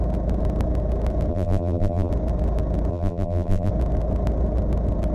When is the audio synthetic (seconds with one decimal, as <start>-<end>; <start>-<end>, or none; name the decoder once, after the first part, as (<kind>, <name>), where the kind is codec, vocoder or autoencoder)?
1.3-2.1 (vocoder, BigVGAN v2); 2.9-3.7